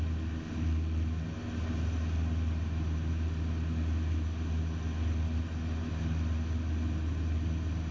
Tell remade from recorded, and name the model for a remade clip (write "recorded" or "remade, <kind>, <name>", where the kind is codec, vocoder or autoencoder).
recorded